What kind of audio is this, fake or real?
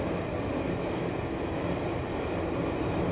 real